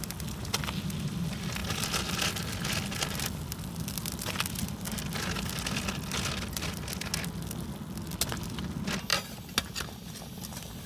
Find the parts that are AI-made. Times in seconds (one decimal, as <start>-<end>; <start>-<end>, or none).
none